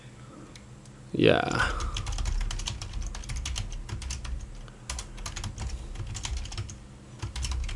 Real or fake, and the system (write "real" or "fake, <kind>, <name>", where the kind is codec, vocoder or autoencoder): real